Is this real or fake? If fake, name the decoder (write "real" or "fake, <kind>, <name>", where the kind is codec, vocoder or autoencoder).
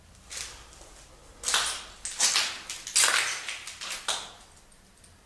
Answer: real